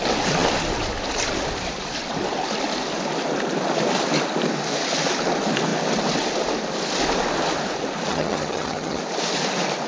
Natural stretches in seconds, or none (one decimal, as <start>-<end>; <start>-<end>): 0.0-8.1; 9.0-9.9